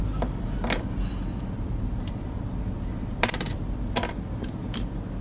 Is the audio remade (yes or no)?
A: no